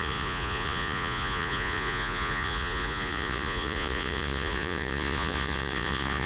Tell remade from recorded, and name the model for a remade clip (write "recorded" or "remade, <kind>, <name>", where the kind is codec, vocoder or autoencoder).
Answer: remade, vocoder, Vocos